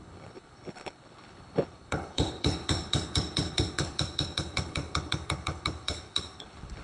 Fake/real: fake